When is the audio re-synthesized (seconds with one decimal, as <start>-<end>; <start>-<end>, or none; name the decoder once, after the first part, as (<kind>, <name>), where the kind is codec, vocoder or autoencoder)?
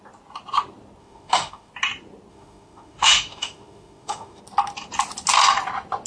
1.0-1.7 (autoencoder, DAC-VAE); 2.3-4.4